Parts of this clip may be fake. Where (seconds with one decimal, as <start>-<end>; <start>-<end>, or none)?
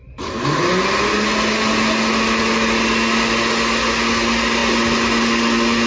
none